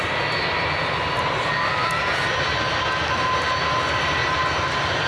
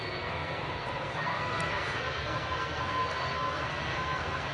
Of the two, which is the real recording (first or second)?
first